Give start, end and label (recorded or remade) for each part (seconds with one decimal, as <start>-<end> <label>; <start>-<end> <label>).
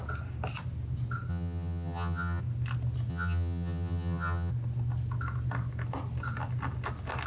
0.0-1.3 recorded; 1.3-2.4 remade; 2.4-3.1 recorded; 3.1-4.5 remade; 4.5-7.3 recorded